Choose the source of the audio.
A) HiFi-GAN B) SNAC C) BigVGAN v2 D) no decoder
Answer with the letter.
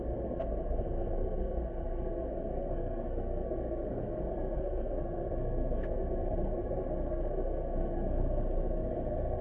B